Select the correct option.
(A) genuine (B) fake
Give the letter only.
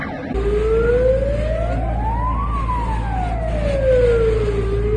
A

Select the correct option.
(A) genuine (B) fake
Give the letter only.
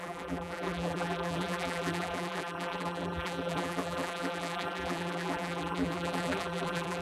B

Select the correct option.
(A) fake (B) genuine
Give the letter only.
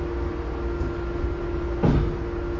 B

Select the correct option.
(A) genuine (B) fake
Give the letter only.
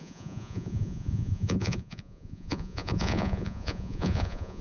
B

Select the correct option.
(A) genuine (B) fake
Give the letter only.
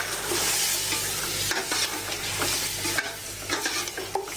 A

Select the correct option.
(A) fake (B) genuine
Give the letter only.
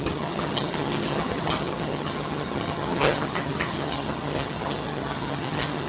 A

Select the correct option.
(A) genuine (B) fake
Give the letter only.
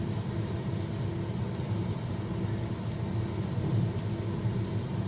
A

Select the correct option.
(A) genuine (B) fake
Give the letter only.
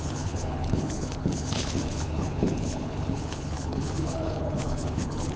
B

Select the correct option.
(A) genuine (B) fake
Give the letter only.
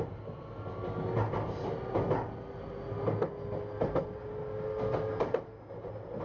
A